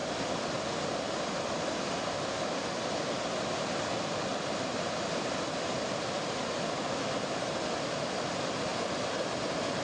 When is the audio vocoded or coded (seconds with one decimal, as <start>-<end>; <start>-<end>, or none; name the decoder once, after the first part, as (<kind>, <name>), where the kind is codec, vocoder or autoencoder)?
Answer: none